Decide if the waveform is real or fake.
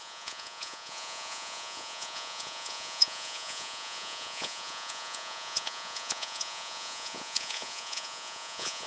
fake